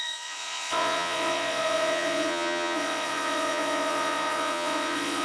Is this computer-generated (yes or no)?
yes